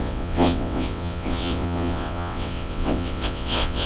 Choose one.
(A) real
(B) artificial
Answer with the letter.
B